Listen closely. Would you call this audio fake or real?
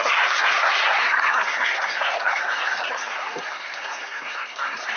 fake